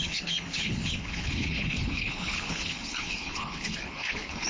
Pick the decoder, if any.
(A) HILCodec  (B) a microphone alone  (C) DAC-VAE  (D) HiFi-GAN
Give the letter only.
A